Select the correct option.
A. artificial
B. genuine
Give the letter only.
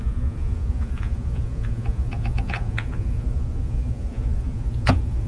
A